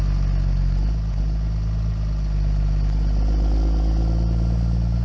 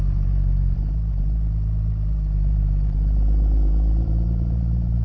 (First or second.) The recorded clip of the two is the first